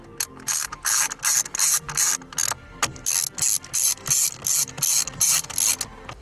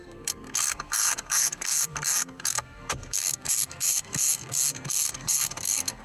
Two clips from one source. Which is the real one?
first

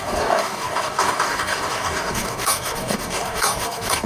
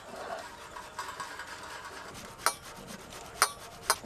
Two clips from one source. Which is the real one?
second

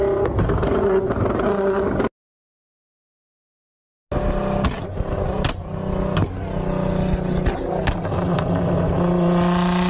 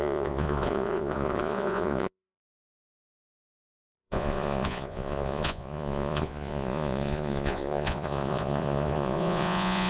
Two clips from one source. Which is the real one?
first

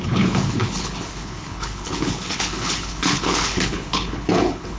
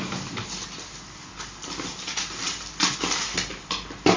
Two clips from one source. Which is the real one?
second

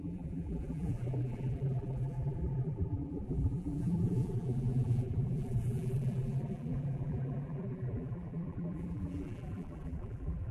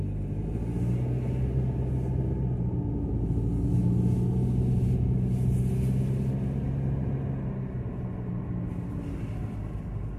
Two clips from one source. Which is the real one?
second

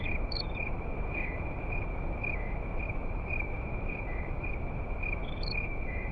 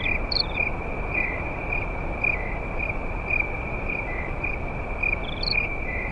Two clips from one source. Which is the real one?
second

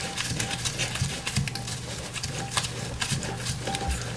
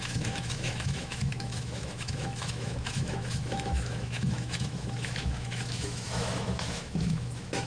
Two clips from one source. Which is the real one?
first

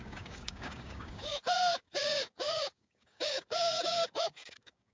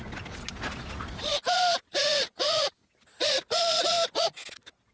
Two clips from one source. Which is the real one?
second